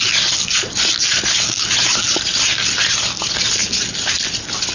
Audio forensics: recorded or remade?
recorded